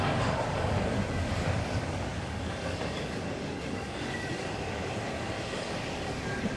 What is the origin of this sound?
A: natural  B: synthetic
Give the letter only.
B